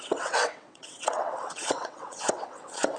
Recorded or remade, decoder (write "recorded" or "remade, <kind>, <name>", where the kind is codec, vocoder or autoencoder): remade, vocoder, WaveNeXt